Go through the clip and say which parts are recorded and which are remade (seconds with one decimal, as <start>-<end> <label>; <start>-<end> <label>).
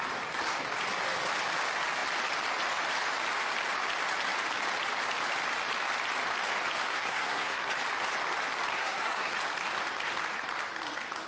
0.0-6.9 recorded; 6.9-7.7 remade; 7.7-8.7 recorded; 8.7-9.3 remade; 9.3-11.3 recorded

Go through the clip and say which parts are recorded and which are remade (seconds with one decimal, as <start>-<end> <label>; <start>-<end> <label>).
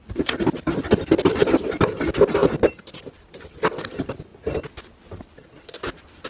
0.0-6.3 recorded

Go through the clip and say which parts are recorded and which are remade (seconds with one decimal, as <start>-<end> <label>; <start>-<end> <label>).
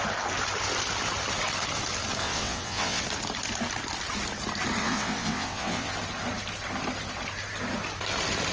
0.0-2.2 recorded; 2.2-3.0 remade; 3.0-4.8 recorded; 4.8-5.9 remade; 5.9-8.5 recorded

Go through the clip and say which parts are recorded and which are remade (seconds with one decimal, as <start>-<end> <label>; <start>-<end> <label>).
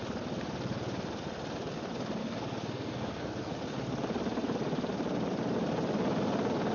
0.0-2.2 recorded; 2.2-3.6 remade; 3.6-6.7 recorded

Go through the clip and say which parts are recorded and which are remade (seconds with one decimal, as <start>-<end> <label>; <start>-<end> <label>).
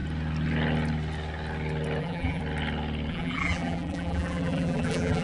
0.0-2.0 recorded; 2.0-2.4 remade; 2.4-3.1 recorded; 3.1-5.2 remade